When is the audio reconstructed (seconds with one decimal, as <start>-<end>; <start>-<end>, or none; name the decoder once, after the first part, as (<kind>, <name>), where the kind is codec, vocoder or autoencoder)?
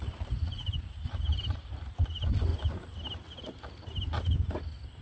0.0-2.5 (vocoder, BigVGAN v2)